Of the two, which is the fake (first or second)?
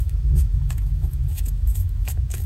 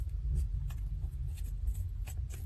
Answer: first